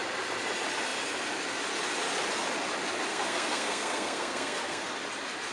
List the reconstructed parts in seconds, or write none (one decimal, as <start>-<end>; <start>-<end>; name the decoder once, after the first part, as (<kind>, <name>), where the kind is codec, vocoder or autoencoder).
3.1-4.8 (codec, SNAC)